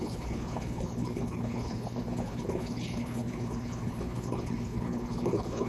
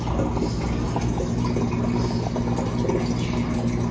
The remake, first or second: first